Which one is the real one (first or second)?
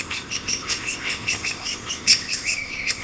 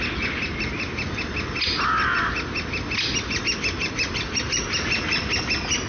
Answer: second